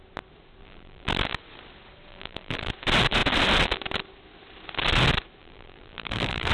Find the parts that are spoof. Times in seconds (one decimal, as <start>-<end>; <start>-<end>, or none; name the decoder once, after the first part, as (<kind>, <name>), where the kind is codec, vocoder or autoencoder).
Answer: 0.6-1.1 (vocoder, BigVGAN v2); 2.1-2.7; 5.4-6.5